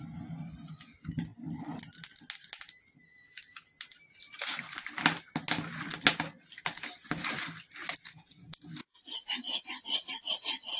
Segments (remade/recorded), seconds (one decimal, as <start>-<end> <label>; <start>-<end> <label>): 0.0-10.8 recorded